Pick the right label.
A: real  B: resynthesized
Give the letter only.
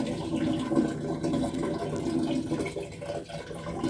A